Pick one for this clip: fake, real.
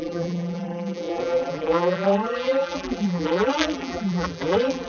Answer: fake